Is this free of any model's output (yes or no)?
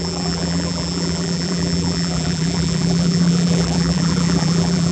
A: no